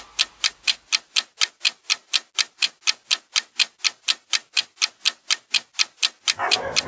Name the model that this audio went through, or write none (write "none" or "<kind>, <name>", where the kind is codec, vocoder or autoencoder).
none